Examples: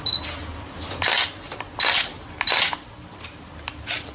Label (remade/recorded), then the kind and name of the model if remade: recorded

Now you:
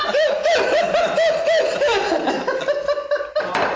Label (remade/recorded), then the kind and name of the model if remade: recorded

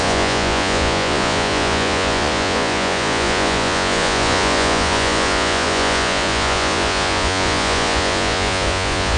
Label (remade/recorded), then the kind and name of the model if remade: remade, vocoder, Vocos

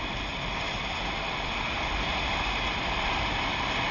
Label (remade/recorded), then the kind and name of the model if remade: recorded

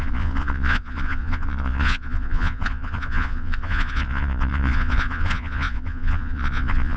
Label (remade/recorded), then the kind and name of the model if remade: remade, vocoder, Vocos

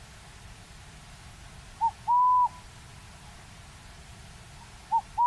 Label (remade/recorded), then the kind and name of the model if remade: recorded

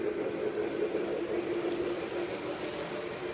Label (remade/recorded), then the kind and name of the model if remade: recorded